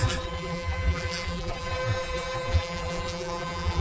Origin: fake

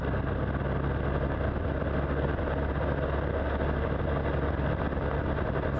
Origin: real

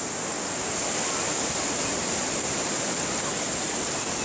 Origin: real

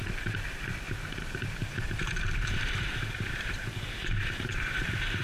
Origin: fake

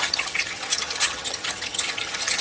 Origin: fake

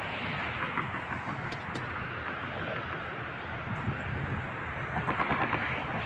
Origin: real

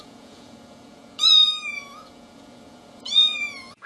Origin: fake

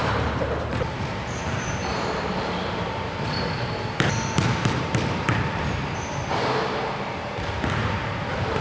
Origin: fake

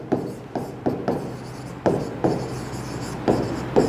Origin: real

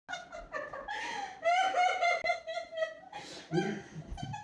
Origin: real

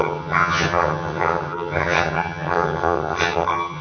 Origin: fake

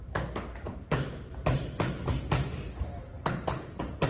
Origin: real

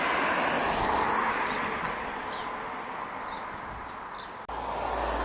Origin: real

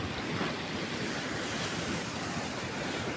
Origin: real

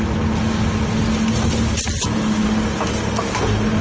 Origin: real